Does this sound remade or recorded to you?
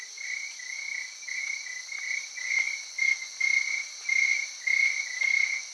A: recorded